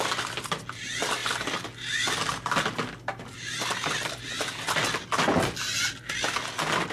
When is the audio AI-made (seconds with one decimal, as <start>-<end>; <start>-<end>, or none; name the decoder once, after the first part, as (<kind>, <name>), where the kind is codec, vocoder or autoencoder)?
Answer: none